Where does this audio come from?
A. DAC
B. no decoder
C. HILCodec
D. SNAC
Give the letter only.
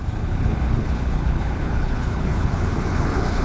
C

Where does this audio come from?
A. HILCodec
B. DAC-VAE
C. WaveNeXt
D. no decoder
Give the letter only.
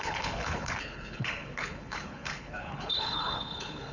A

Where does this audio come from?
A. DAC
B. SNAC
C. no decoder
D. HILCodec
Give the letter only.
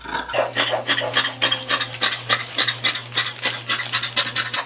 C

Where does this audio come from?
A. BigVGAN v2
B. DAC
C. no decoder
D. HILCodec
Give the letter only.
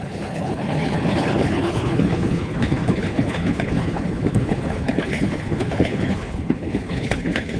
D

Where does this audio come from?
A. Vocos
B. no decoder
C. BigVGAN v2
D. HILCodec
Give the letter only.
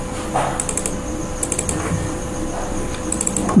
B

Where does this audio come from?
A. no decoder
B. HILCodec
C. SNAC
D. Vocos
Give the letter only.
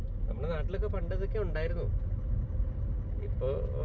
A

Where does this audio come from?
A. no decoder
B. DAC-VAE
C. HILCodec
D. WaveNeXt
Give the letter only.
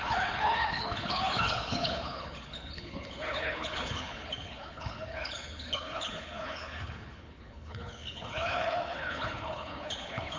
C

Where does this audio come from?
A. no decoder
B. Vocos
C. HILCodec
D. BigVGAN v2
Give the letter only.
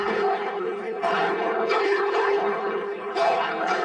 C